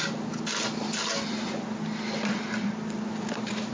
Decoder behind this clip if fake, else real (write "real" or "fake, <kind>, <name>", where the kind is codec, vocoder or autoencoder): real